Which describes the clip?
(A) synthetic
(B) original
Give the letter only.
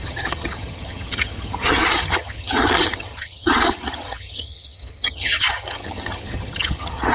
A